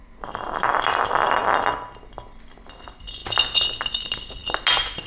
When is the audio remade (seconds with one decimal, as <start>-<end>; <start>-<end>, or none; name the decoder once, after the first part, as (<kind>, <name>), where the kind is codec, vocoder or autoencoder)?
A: none